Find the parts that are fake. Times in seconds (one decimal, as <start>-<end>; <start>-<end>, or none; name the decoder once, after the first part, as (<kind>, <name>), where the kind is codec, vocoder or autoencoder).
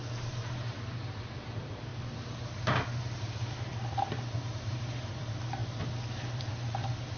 0.0-1.9 (vocoder, BigVGAN v2); 3.0-5.6; 6.1-7.2